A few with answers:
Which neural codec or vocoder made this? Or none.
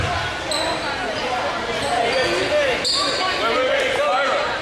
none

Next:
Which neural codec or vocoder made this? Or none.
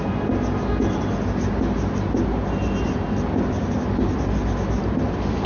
none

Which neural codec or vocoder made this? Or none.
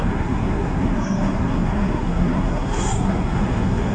codec, SNAC